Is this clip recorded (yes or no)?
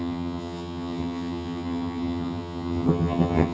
no